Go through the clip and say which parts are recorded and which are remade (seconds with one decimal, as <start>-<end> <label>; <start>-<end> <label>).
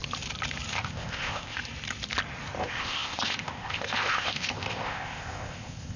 0.0-0.7 recorded; 0.7-1.6 remade; 1.6-2.6 recorded; 2.6-6.0 remade